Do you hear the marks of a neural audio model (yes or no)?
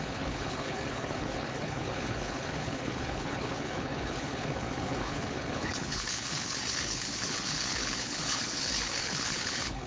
yes